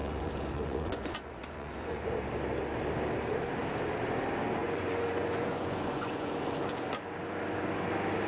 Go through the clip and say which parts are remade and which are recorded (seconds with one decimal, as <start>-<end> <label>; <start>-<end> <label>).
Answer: 0.0-2.1 remade; 2.1-4.6 recorded; 4.6-6.3 remade; 6.3-8.3 recorded